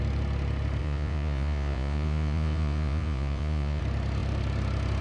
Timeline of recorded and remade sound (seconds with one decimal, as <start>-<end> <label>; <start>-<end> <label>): 0.0-0.8 recorded; 0.8-3.8 remade; 3.8-5.0 recorded